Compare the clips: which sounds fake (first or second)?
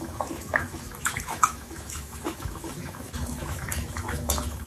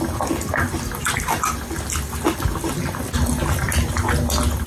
first